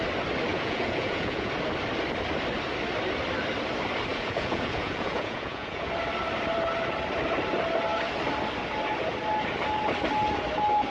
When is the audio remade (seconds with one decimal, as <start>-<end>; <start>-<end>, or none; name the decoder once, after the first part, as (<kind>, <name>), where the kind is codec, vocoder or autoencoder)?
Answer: 0.5-1.5 (vocoder, Vocos); 4.1-5.9